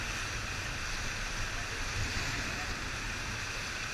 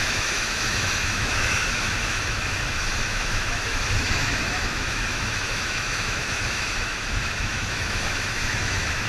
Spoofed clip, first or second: second